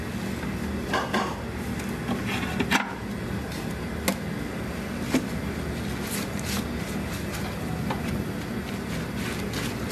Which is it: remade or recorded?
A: recorded